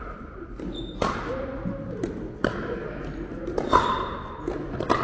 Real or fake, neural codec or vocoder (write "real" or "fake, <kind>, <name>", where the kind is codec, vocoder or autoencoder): real